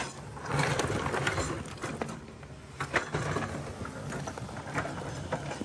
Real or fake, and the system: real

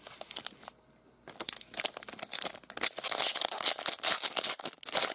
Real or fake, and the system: real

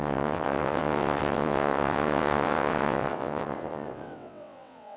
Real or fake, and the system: fake, vocoder, WaveNeXt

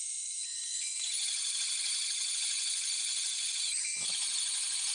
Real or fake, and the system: fake, vocoder, Vocos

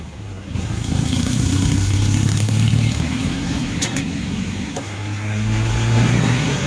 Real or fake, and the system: fake, codec, SNAC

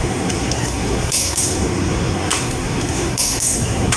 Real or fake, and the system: fake, codec, SNAC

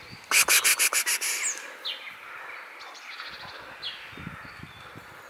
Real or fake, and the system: real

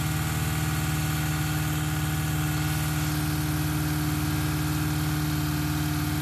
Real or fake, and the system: real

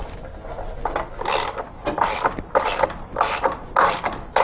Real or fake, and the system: real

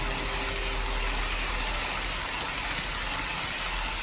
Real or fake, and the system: real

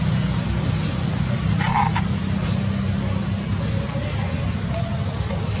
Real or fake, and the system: real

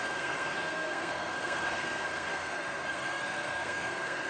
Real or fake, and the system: fake, codec, SNAC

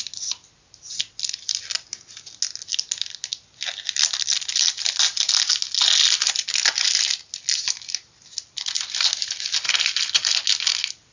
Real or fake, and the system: real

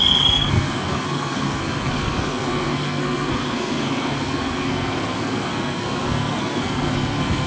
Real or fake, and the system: fake, codec, SNAC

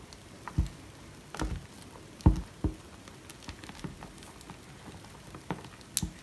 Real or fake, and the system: real